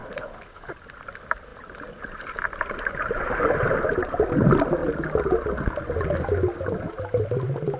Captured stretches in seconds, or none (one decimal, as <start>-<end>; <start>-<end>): 0.7-7.8